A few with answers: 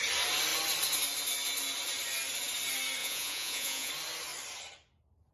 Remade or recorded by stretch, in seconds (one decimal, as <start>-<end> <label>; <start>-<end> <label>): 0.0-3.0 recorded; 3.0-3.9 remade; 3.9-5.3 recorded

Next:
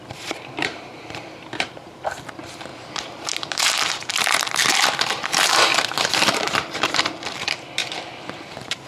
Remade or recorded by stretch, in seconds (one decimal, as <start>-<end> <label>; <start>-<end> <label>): 0.0-5.7 remade; 5.7-6.3 recorded; 6.3-7.8 remade; 7.8-8.4 recorded; 8.4-8.9 remade

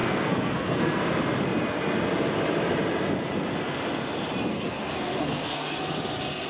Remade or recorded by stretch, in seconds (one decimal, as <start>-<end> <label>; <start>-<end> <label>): 0.0-1.0 remade; 1.0-4.5 recorded; 4.5-5.8 remade; 5.8-6.5 recorded

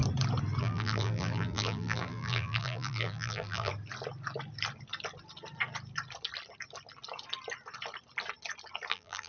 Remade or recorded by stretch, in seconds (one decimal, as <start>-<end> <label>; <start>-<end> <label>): 0.0-0.6 recorded; 0.6-3.7 remade; 3.7-8.9 recorded; 8.9-9.3 remade